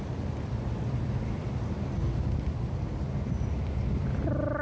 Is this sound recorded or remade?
recorded